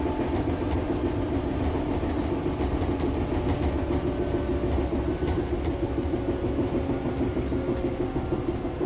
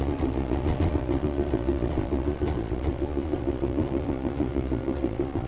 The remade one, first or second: second